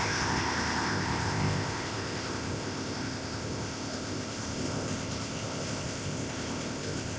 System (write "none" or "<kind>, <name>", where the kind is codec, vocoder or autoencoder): codec, ZipCodec